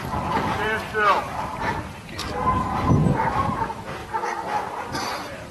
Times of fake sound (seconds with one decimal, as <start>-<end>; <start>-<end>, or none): 0.0-4.0; 4.7-5.5